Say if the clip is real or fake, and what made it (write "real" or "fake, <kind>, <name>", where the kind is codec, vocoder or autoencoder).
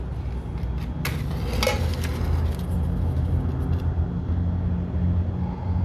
real